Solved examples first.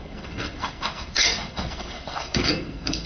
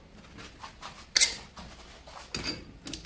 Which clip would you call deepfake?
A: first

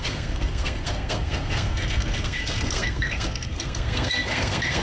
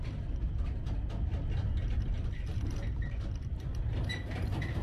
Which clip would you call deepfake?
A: first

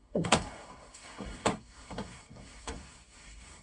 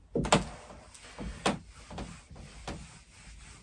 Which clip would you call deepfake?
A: first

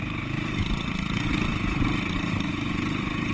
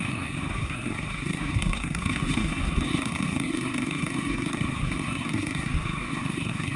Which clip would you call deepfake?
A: second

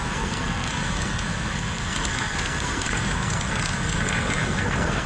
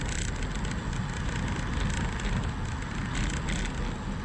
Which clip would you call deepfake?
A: first